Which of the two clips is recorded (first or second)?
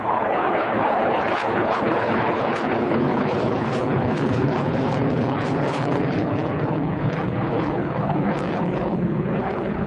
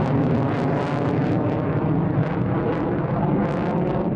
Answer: second